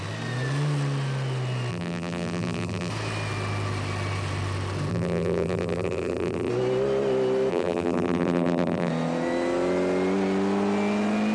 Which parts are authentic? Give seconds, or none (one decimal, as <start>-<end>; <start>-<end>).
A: 0.0-1.7; 2.9-4.9; 6.5-7.5; 8.9-11.3